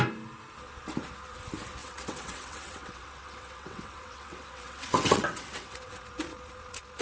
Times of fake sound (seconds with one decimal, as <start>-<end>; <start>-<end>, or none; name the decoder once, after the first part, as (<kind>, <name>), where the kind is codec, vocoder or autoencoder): 1.8-6.0 (vocoder, WaveNeXt)